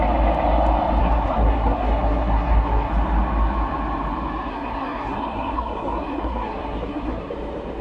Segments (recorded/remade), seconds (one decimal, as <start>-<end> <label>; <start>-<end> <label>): 0.0-1.0 recorded; 1.0-2.9 remade; 2.9-4.5 recorded; 4.5-7.3 remade; 7.3-7.8 recorded